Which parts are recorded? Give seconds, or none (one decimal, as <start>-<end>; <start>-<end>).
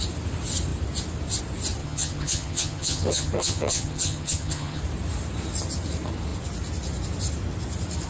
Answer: 0.0-1.8; 4.8-8.1